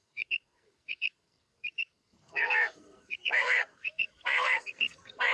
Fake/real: fake